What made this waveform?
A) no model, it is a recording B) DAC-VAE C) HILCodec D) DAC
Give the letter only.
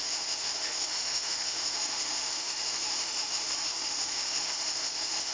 B